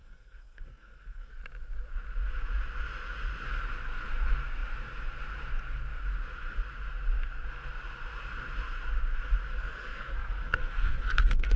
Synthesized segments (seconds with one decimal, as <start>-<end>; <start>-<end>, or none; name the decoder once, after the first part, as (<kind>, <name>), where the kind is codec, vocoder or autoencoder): 0.0-1.3 (codec, SNAC); 9.5-11.6